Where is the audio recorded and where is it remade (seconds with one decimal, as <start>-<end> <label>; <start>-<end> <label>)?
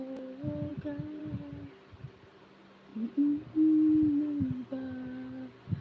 0.0-5.8 recorded